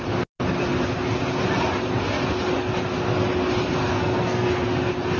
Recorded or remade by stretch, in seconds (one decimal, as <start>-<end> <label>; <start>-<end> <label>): 0.0-3.9 recorded; 3.9-4.5 remade; 4.5-5.2 recorded